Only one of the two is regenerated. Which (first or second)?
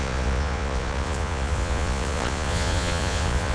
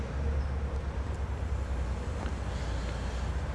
first